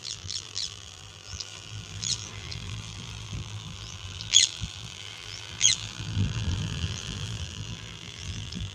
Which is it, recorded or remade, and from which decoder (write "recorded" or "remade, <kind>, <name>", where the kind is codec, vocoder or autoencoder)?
remade, vocoder, BigVGAN v2